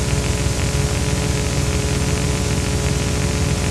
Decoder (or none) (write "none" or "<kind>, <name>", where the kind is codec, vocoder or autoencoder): none